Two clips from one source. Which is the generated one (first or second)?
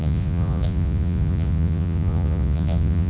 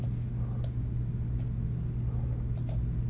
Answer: first